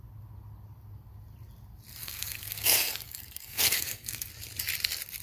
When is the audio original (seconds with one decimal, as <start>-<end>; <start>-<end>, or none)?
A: 0.0-2.0; 4.3-5.2